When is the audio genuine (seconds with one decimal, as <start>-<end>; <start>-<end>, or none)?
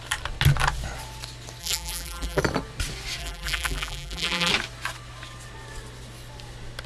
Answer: 0.0-1.6; 2.4-3.2; 4.5-6.9